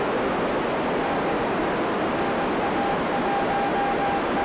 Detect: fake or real real